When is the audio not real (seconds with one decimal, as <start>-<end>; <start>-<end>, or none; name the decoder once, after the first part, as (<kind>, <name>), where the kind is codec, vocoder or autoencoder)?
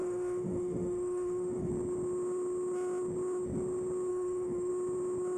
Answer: 0.0-1.7 (autoencoder, DAC-VAE); 4.1-4.7